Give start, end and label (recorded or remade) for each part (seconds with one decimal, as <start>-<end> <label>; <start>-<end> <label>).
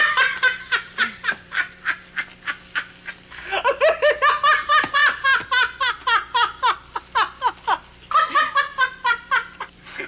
0.0-10.1 recorded